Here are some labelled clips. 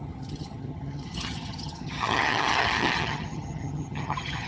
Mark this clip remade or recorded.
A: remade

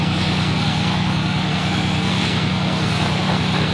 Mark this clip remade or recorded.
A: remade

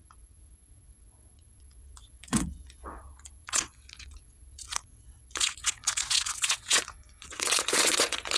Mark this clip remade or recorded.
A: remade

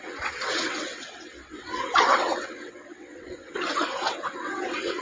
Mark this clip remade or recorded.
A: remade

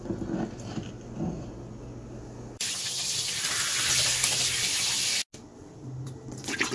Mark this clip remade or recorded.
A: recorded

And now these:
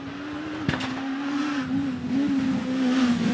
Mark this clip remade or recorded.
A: recorded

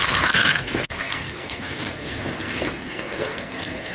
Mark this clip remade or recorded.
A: remade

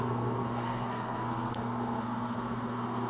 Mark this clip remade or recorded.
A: remade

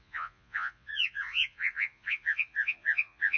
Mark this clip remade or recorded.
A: remade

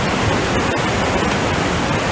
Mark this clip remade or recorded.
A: recorded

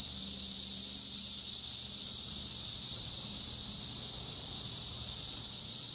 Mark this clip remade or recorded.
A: recorded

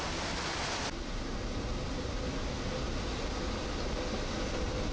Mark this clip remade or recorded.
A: recorded